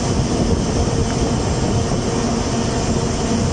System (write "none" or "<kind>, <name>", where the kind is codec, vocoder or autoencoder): none